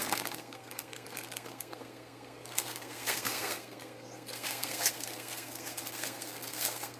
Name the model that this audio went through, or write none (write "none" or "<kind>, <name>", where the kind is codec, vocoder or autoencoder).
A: codec, SNAC